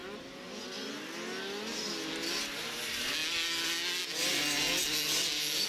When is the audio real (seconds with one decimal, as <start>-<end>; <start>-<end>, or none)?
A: 0.0-5.7

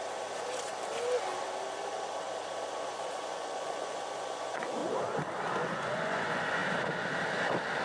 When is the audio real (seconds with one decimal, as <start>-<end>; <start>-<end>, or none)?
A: 0.0-2.7; 4.8-5.6; 6.6-7.8

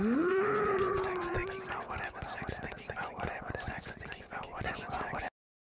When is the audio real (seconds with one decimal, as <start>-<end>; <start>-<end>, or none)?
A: 1.4-2.8

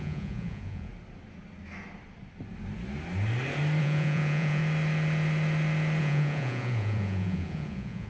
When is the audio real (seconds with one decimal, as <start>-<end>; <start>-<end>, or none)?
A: 0.9-3.8; 4.6-6.0

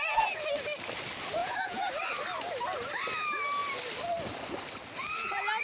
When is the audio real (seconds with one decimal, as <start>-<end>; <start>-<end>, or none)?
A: 0.0-1.4; 1.9-5.6

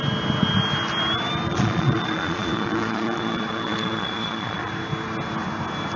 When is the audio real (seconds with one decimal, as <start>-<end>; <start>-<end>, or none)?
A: 0.0-1.5; 4.7-6.0

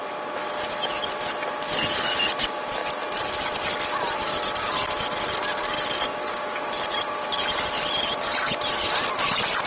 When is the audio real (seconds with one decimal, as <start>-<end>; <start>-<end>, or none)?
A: 0.0-9.7

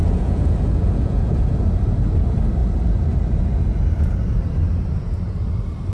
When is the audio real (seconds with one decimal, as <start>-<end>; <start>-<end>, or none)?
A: 1.3-5.9